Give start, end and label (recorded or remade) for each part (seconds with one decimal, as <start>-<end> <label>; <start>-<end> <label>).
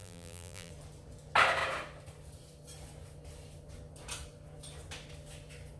0.0-0.7 remade; 0.7-5.8 recorded